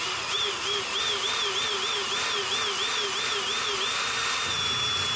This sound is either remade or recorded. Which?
recorded